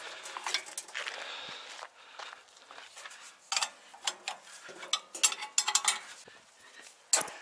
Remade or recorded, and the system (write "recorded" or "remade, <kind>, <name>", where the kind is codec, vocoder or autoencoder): recorded